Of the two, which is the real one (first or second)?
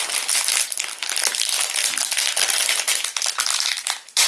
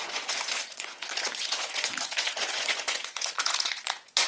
first